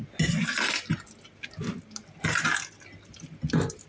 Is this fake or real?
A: real